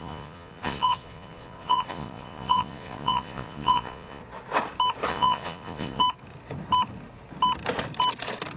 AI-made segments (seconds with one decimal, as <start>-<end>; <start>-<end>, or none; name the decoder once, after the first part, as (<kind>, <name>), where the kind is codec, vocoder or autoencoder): 0.0-4.2 (vocoder, Vocos); 5.1-6.0